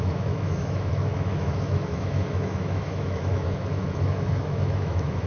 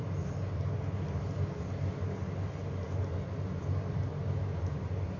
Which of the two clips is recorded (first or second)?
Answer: second